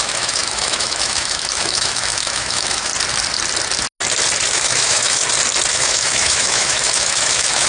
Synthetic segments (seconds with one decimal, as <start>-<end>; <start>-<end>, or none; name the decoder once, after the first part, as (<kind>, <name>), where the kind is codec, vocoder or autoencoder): 0.0-2.9 (autoencoder, DAC-VAE); 4.5-5.2; 5.7-7.7